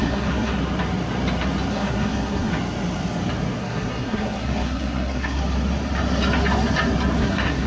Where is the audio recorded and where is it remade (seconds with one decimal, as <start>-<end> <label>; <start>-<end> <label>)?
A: 0.0-0.6 remade; 0.6-1.7 recorded; 1.7-2.5 remade; 2.5-3.6 recorded; 3.6-5.4 remade; 5.4-7.2 recorded; 7.2-7.7 remade